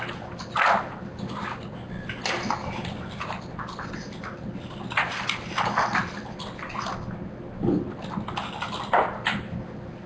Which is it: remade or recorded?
recorded